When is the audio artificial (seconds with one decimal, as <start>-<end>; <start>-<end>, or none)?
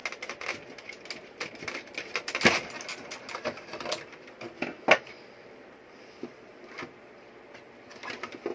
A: 1.5-8.5